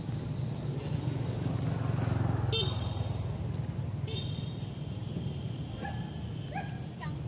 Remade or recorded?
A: recorded